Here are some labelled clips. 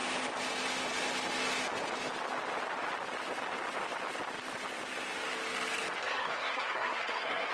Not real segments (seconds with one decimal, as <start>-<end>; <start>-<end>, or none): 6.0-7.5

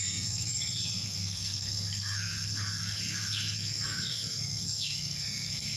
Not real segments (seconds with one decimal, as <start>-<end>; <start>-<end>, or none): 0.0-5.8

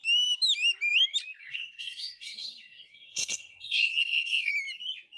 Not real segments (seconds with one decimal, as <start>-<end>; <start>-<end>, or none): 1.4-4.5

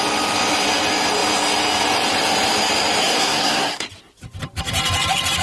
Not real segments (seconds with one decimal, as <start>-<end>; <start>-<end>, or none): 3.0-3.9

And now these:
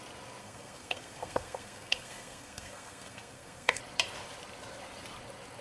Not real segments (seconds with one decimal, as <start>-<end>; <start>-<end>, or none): 0.4-3.8

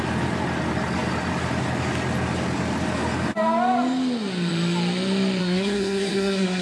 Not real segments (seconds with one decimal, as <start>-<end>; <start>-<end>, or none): 5.4-6.6

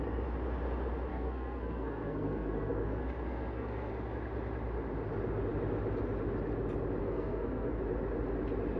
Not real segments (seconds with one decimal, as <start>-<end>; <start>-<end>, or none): 1.1-3.9; 7.0-7.8

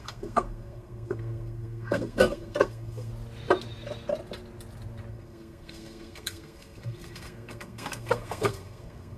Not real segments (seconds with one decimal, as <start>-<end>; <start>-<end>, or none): 0.0-3.1; 5.1-9.2